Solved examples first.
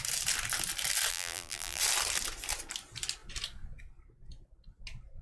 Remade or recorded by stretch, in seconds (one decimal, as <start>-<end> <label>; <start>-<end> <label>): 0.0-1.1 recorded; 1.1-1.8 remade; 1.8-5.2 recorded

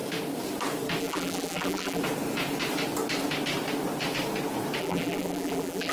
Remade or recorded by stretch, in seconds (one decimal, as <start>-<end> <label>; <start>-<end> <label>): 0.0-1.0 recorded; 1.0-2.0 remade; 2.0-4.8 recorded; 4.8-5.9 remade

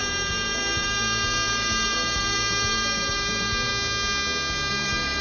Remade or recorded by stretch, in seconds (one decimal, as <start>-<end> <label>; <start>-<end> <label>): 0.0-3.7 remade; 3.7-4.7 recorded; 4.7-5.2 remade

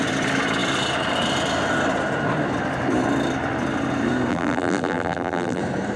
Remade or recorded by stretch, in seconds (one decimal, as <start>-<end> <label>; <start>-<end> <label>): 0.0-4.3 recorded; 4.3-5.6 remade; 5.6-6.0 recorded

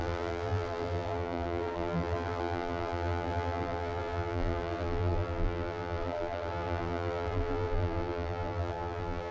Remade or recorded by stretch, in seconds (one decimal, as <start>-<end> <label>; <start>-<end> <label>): 0.0-9.3 remade